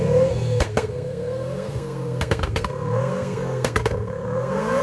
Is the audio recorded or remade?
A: remade